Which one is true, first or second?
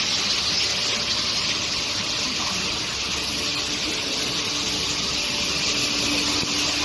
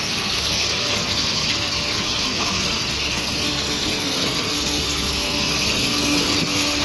first